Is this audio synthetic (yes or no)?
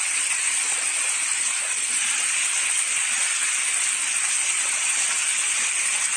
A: no